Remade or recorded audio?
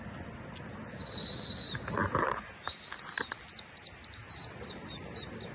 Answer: recorded